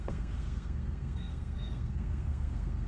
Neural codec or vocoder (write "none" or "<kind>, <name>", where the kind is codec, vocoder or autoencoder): codec, SNAC